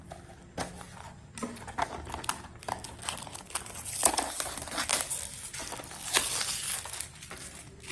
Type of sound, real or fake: real